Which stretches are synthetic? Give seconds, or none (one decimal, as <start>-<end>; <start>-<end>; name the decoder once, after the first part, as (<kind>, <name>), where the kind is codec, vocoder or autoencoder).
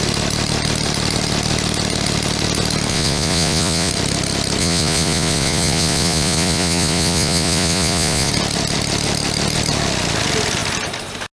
2.9-3.9 (vocoder, Vocos); 4.6-8.3